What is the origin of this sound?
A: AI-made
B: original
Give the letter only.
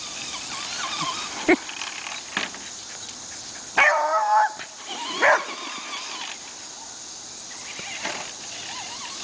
B